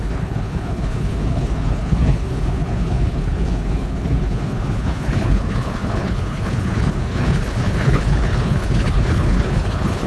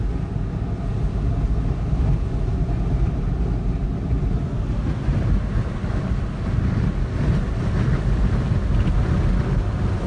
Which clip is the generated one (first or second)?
first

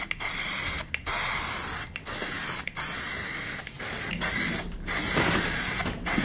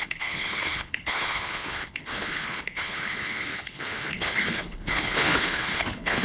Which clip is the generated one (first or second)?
second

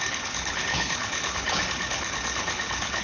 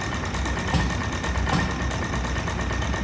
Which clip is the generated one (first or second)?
first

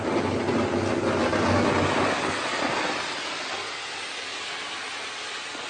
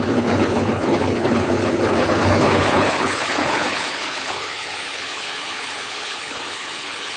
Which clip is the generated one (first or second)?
second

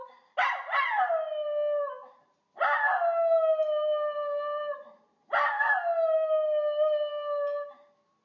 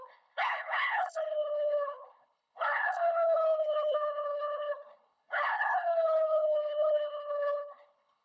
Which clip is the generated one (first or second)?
second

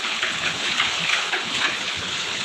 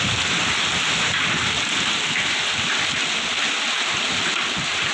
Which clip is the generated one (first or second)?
first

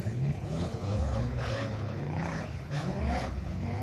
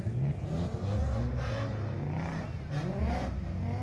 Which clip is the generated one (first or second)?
first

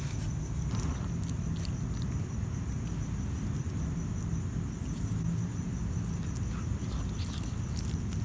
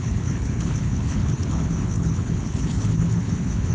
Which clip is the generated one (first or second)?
second